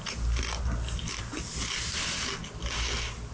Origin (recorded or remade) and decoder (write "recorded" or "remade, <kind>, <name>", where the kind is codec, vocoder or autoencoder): recorded